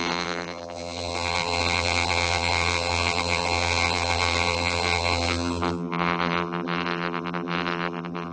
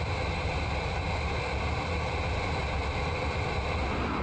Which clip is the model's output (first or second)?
first